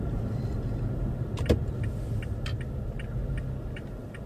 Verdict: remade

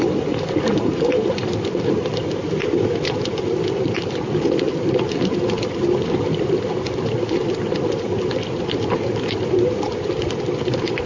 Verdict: remade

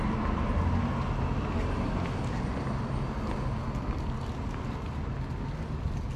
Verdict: recorded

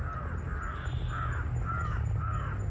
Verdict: recorded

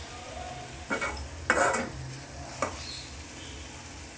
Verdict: recorded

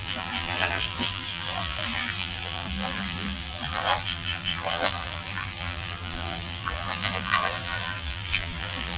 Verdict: remade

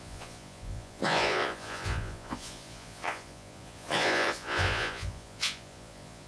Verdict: remade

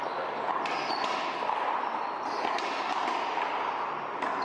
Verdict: recorded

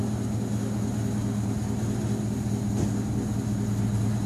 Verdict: recorded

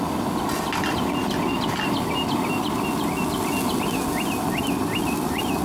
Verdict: recorded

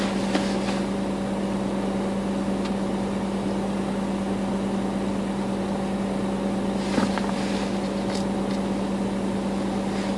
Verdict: remade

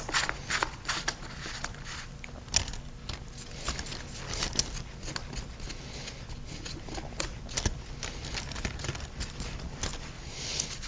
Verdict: recorded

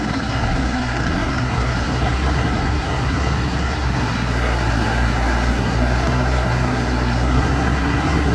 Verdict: remade